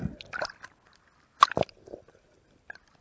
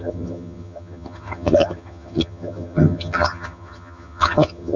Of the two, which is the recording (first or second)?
first